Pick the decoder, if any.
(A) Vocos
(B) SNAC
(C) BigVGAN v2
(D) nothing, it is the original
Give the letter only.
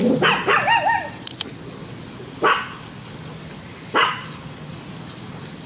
D